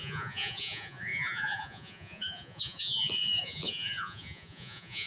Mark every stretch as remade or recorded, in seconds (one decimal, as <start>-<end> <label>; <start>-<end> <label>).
0.0-5.1 remade